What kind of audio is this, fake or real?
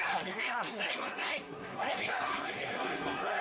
fake